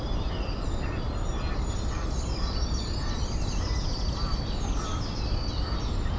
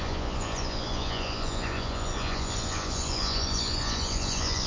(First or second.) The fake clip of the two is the second